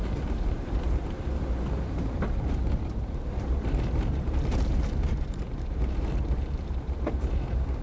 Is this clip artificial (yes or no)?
yes